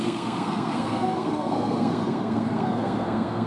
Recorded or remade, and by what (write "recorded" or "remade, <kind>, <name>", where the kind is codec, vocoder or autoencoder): remade, codec, SNAC